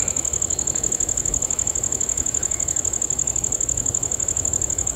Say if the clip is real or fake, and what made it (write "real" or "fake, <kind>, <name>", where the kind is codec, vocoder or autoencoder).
fake, autoencoder, DAC-VAE